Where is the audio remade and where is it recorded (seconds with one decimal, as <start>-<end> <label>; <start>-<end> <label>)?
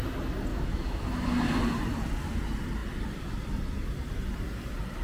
0.0-0.5 recorded; 0.5-1.0 remade; 1.0-5.0 recorded